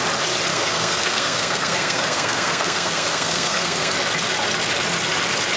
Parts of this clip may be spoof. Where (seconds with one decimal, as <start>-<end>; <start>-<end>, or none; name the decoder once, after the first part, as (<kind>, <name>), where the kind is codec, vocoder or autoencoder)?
0.5-3.9 (codec, SNAC)